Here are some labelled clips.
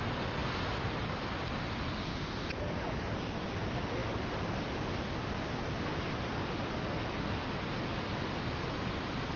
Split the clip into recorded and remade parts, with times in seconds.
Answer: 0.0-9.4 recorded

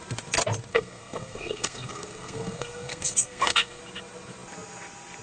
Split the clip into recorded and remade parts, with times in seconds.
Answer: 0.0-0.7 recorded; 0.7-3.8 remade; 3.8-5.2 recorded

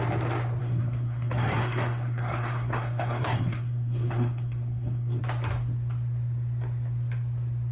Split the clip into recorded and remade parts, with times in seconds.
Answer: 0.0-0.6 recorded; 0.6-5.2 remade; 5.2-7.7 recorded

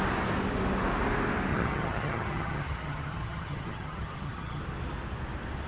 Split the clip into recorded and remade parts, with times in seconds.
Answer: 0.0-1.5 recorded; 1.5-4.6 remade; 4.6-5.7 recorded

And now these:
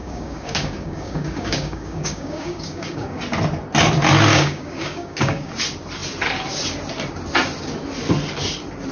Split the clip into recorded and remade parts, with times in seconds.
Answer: 0.0-3.2 remade; 3.2-4.3 recorded; 4.3-5.5 remade; 5.5-8.9 recorded

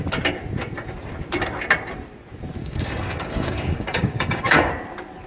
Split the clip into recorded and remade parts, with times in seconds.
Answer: 0.0-2.6 recorded; 2.6-4.7 remade; 4.7-5.3 recorded

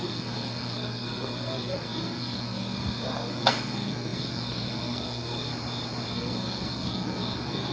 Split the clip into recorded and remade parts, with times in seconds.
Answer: 0.0-5.5 remade; 5.5-6.1 recorded; 6.1-7.7 remade